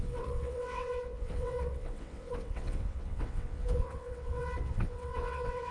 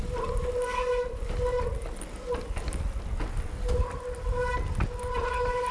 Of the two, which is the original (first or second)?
second